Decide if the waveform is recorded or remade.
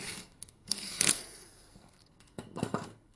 remade